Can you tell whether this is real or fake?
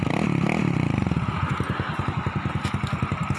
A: real